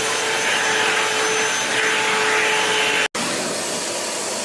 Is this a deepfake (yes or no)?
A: no